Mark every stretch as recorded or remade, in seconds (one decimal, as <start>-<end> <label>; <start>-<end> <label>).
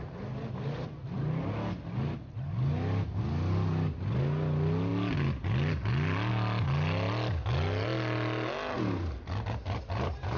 0.0-10.4 recorded